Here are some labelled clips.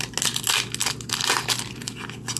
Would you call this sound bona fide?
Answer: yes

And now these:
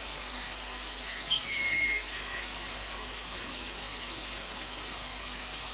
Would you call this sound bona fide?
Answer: no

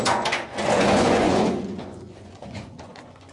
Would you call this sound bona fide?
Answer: no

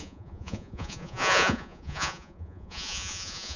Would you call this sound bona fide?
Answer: no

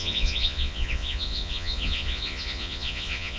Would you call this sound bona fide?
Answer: no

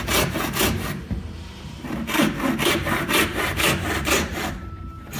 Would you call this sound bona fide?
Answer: no